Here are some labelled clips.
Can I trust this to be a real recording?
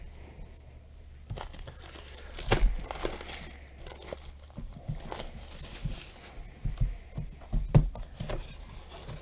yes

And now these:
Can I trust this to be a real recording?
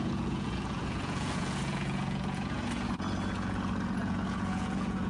no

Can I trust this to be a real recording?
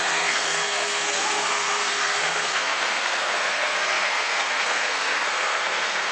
no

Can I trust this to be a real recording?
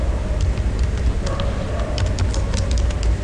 yes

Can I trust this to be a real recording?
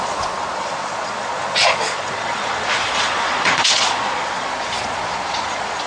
no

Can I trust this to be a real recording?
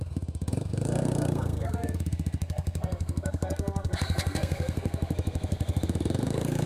no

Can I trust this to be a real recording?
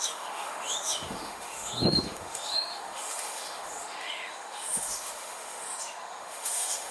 no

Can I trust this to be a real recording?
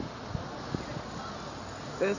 yes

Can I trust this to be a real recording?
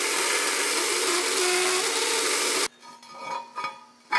yes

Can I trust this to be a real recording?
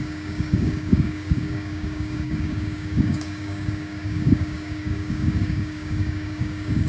no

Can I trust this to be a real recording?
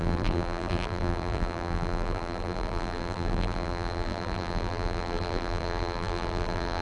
no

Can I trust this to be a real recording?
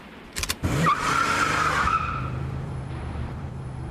no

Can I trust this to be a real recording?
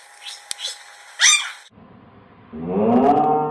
yes